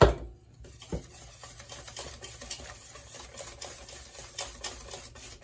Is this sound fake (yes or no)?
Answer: no